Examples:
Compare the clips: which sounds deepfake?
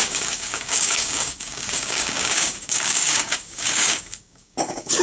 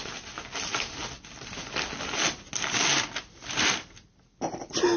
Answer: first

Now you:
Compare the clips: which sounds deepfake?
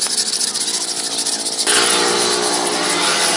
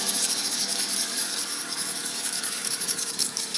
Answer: second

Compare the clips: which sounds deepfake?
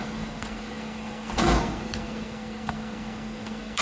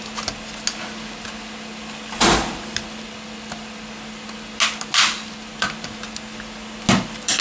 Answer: first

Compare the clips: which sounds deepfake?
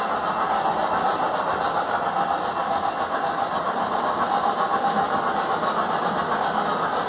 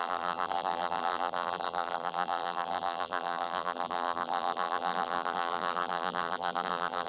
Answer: second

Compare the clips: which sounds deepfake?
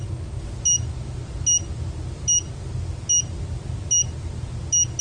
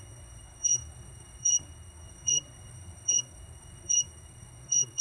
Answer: second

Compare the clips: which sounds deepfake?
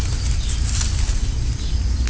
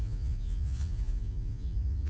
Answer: second